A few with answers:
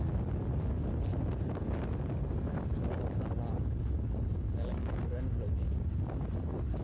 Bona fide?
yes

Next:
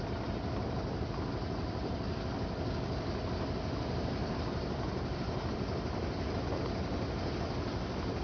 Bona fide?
yes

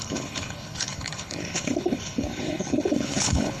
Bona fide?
no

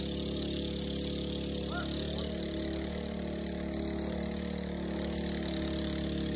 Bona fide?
yes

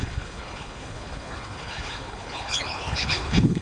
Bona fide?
no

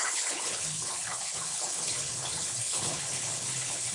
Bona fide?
no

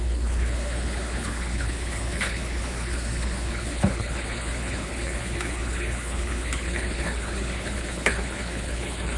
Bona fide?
no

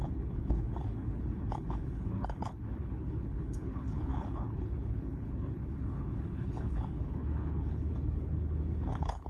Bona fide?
no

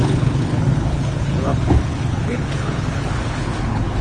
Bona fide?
no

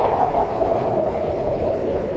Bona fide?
no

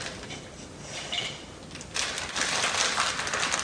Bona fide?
yes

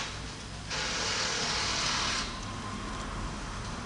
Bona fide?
yes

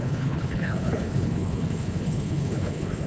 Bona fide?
no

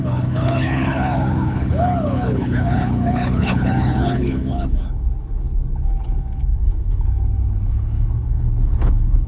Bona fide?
no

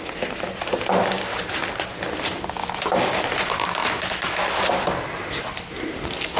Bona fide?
yes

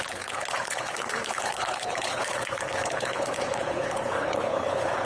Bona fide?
no